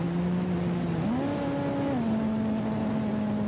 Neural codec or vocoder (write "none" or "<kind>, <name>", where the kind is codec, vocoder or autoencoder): none